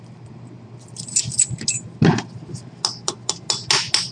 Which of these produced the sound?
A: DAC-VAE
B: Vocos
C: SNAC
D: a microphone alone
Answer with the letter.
D